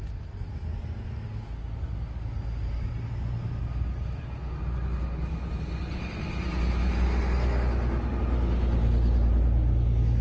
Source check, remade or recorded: recorded